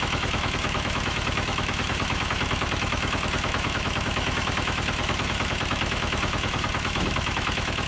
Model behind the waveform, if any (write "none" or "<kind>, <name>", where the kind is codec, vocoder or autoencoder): autoencoder, DAC-VAE